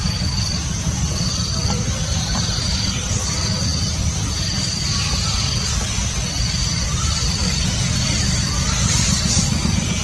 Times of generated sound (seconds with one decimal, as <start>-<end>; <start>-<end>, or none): 3.7-4.2